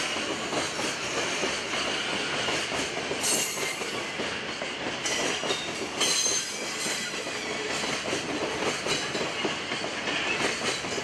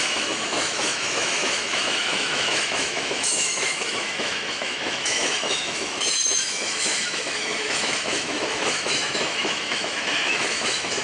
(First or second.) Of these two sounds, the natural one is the first